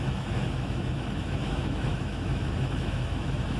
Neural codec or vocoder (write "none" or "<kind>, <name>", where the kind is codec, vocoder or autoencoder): autoencoder, DAC-VAE